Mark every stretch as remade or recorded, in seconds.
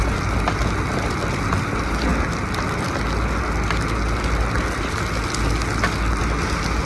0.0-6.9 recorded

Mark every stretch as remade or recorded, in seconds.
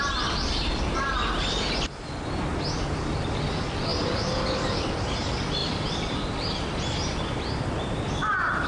0.0-5.6 recorded; 5.6-7.5 remade; 7.5-8.7 recorded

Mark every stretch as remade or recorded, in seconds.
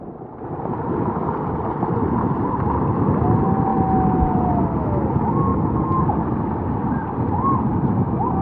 0.0-8.4 recorded